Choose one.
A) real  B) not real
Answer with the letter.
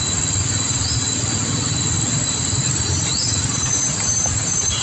A